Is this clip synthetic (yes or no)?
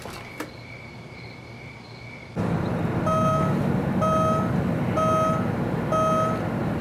no